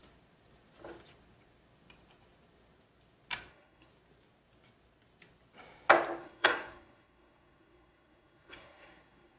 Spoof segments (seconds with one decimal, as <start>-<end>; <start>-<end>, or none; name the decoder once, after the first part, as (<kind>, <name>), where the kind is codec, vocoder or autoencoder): 3.5-3.9 (codec, SNAC); 6.2-9.4